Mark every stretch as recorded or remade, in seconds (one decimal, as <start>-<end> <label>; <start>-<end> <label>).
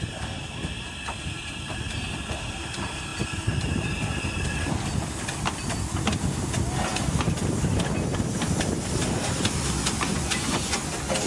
0.0-10.1 recorded; 10.1-10.8 remade; 10.8-11.3 recorded